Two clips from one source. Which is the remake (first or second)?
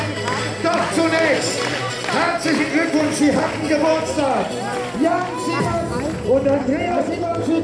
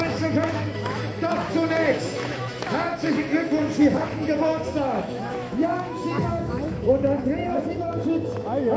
second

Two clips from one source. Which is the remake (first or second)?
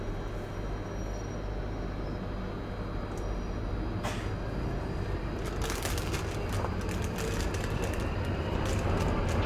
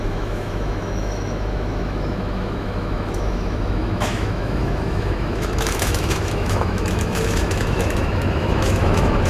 second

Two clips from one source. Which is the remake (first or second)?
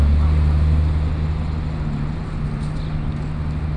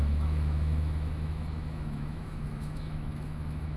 second